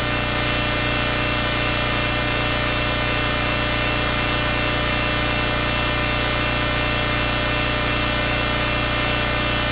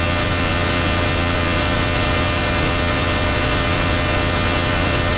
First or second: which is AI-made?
second